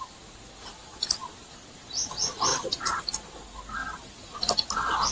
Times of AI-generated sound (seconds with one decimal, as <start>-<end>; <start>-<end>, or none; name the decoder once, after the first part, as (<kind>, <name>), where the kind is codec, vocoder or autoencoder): 2.5-3.0 (vocoder, BigVGAN v2); 3.8-5.1